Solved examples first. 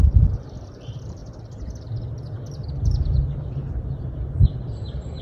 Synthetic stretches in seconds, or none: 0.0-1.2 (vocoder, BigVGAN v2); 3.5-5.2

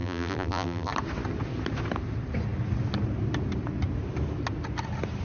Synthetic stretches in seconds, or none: 0.0-0.9 (vocoder, BigVGAN v2)

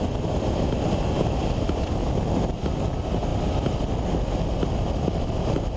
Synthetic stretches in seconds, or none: none